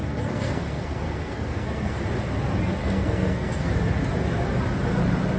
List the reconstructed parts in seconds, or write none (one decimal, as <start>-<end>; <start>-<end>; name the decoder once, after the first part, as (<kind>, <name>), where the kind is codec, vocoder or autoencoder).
0.0-2.0 (codec, SNAC); 2.8-3.7